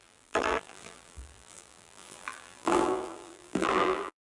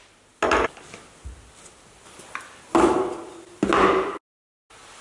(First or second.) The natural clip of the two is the second